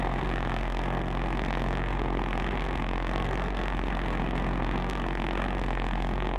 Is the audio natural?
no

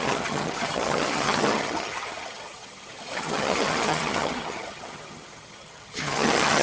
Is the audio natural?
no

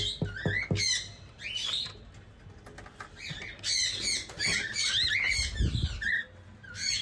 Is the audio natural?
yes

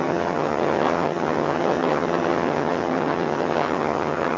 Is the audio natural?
no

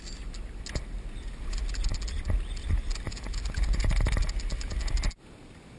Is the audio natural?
yes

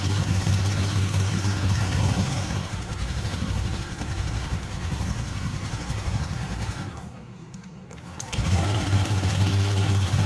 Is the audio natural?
no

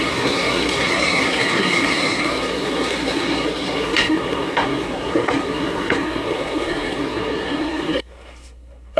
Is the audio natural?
no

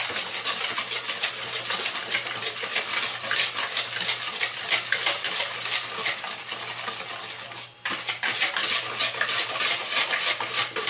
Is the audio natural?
yes